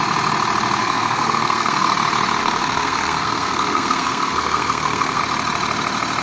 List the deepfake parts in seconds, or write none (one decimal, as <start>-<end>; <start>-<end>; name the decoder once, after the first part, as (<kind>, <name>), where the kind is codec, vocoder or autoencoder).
0.8-1.9 (codec, SNAC); 2.4-5.2